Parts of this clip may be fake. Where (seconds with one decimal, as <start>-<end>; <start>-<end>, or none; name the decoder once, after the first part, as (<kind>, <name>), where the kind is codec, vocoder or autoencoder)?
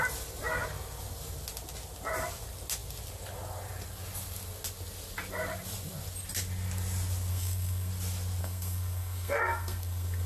7.3-7.9 (codec, SNAC); 8.4-10.3